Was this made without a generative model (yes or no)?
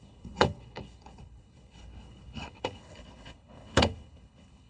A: no